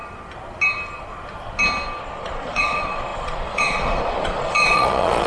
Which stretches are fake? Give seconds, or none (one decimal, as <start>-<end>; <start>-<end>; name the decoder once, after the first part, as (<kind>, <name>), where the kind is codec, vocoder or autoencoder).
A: 2.0-5.3 (vocoder, Vocos)